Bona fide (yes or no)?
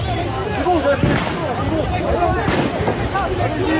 yes